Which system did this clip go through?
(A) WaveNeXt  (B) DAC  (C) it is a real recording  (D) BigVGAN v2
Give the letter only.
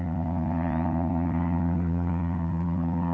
A